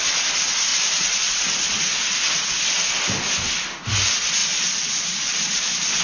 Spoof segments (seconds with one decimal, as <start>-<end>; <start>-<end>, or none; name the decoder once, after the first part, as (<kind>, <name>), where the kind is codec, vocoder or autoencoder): 0.7-1.3 (vocoder, BigVGAN v2); 4.4-6.0